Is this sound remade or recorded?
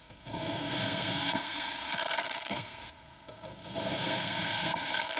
remade